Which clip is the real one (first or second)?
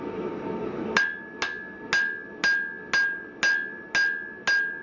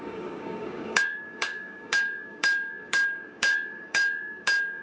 first